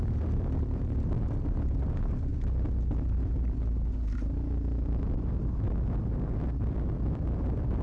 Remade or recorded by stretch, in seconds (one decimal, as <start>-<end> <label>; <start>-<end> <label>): 0.0-2.3 remade; 2.3-6.5 recorded; 6.5-7.8 remade